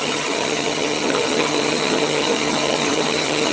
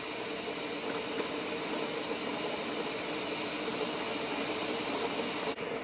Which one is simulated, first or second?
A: first